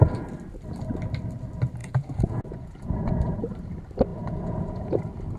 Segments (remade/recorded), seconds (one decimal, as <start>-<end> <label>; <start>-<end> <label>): 0.0-1.8 recorded; 1.8-3.4 remade; 3.4-4.1 recorded; 4.1-5.0 remade; 5.0-5.4 recorded

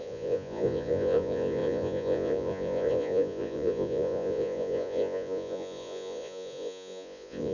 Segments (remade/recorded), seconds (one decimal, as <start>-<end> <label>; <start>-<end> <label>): 0.0-7.5 remade

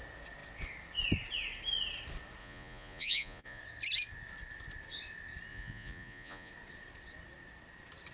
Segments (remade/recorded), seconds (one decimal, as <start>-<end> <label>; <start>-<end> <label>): 0.0-2.4 recorded; 2.4-3.6 remade; 3.6-5.5 recorded; 5.5-6.5 remade; 6.5-8.1 recorded

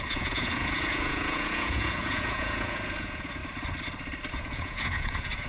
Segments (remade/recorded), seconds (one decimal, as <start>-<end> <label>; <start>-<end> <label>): 0.0-3.4 remade; 3.4-4.3 recorded; 4.3-5.5 remade

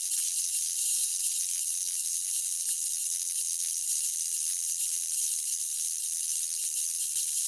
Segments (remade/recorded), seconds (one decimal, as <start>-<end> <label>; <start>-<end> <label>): 0.0-7.5 recorded

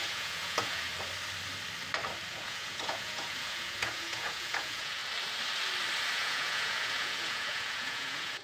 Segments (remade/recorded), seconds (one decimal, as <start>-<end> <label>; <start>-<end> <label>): 0.0-0.9 remade; 0.9-2.3 recorded; 2.3-5.0 remade; 5.0-6.1 recorded; 6.1-8.4 remade

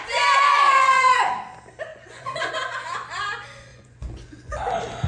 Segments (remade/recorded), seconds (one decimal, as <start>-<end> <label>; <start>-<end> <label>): 0.0-0.5 recorded; 0.5-1.2 remade; 1.2-1.9 recorded; 1.9-2.5 remade; 2.5-3.7 recorded; 3.7-4.6 remade; 4.6-5.1 recorded

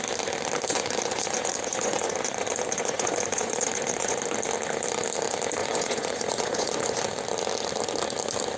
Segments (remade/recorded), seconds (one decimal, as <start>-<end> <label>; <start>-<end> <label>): 0.0-0.7 recorded; 0.7-4.2 remade; 4.2-5.6 recorded; 5.6-7.0 remade; 7.0-8.6 recorded